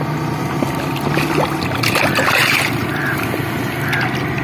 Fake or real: real